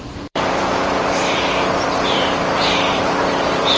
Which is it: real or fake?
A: fake